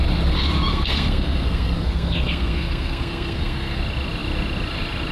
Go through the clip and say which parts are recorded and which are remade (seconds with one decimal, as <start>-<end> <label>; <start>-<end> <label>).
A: 0.0-0.7 recorded; 0.7-3.8 remade; 3.8-5.1 recorded

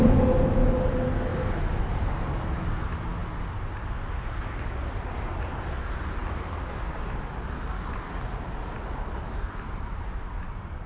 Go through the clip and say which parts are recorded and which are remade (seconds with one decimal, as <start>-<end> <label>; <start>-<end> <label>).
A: 0.0-10.9 recorded

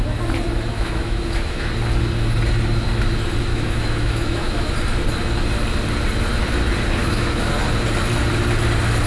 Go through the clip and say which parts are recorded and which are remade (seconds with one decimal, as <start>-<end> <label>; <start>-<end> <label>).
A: 0.0-0.7 recorded; 0.7-1.7 remade; 1.7-3.5 recorded; 3.5-4.7 remade; 4.7-7.0 recorded; 7.0-7.5 remade; 7.5-9.1 recorded